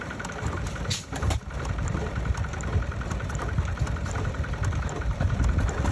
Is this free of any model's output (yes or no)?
yes